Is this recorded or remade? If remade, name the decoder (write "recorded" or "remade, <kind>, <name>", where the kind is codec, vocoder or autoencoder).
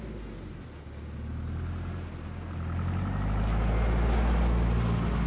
recorded